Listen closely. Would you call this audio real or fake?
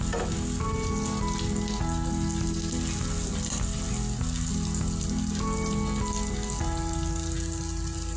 real